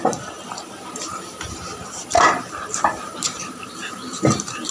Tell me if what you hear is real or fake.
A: fake